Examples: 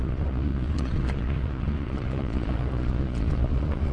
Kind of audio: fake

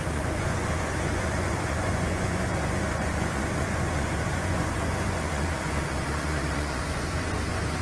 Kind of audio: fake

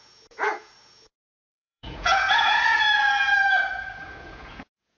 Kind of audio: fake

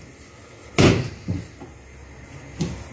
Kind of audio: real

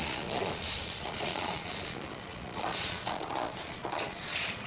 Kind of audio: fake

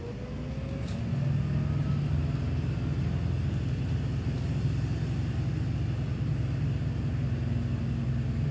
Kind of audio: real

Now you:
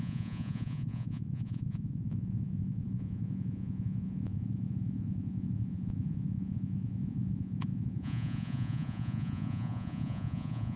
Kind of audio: fake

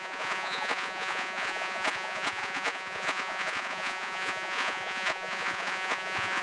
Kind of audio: fake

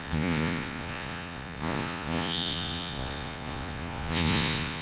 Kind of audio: fake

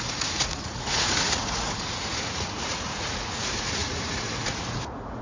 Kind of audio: fake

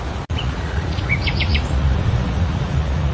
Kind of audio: fake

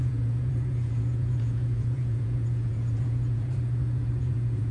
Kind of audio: fake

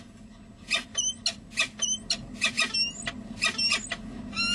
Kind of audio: real